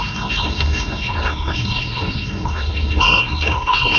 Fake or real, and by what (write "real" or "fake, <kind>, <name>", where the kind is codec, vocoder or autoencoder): fake, codec, SNAC